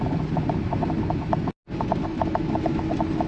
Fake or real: real